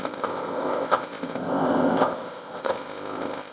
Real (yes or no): no